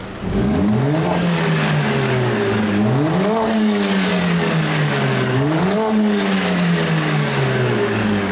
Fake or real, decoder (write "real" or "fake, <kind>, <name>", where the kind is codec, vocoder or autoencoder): fake, codec, DAC